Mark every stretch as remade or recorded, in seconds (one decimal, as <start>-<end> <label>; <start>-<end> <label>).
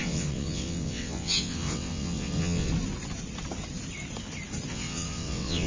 0.0-2.7 remade; 2.7-4.7 recorded; 4.7-5.7 remade